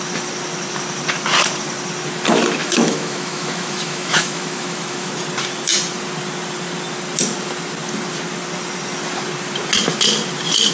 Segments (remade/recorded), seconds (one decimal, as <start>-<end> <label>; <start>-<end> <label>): 0.0-2.6 recorded; 2.6-5.1 remade; 5.1-10.7 recorded

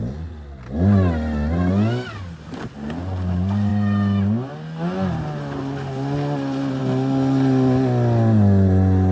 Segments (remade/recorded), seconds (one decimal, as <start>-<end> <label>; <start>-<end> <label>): 0.0-9.1 recorded

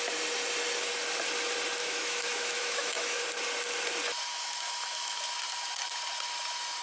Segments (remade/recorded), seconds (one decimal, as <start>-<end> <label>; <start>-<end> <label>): 0.0-1.8 recorded; 1.8-3.2 remade; 3.2-4.3 recorded; 4.3-5.2 remade; 5.2-6.8 recorded